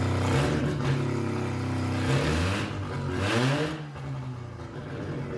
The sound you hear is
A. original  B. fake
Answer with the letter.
A